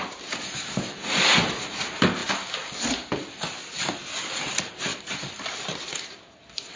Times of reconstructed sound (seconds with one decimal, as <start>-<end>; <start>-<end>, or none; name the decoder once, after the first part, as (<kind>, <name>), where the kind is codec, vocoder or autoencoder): 4.9-5.7 (vocoder, BigVGAN v2)